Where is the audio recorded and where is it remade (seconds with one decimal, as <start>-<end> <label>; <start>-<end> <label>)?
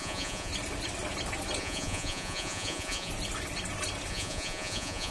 0.0-0.5 remade; 0.5-1.6 recorded; 1.6-3.1 remade; 3.1-4.1 recorded; 4.1-5.1 remade